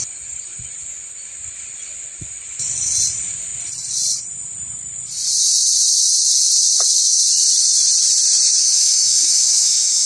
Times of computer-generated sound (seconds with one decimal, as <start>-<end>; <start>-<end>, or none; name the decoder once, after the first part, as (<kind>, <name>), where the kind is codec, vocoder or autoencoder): 8.6-10.1 (autoencoder, DAC-VAE)